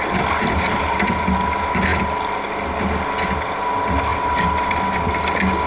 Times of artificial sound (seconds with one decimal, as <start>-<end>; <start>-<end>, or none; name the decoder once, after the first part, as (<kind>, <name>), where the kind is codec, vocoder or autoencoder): 1.9-2.5 (vocoder, BigVGAN v2); 4.1-4.7